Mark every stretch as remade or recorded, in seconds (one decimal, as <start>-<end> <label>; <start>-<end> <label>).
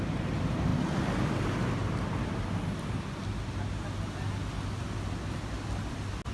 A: 0.0-6.3 recorded